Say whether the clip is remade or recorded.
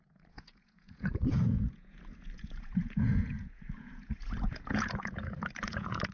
remade